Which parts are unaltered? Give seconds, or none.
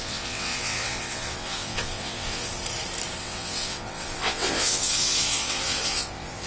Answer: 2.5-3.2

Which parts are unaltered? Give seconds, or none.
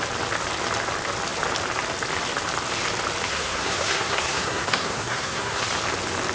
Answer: 0.0-3.3; 5.6-6.3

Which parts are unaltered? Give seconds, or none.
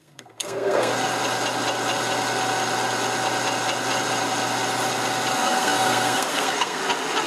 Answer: 0.9-5.3; 6.8-7.3